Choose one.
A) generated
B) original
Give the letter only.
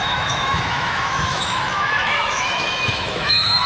A